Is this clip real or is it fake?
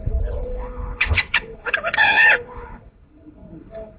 fake